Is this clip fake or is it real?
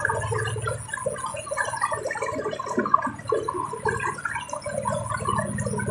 real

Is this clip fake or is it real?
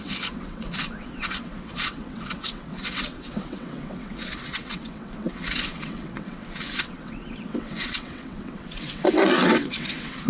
fake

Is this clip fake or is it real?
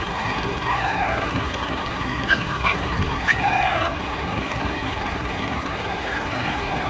fake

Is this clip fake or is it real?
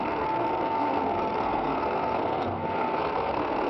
fake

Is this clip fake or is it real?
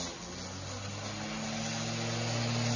real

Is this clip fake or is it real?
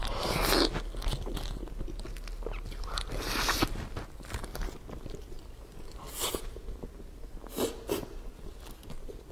real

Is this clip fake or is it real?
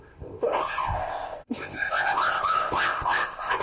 fake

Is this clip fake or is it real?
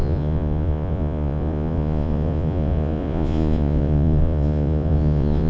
fake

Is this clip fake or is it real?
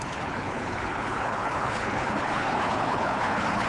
fake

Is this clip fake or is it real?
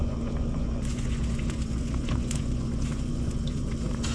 fake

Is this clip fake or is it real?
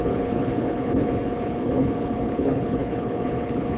fake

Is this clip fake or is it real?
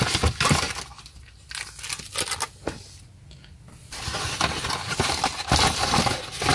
real